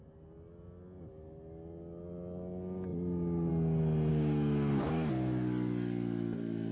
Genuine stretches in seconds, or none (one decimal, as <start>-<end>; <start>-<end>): 0.0-4.1; 5.1-6.7